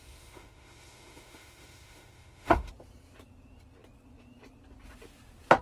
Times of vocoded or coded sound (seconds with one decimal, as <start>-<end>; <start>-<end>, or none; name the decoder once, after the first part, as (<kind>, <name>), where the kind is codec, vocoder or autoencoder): 0.0-2.7 (autoencoder, DAC-VAE)